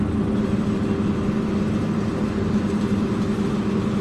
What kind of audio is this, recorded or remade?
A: recorded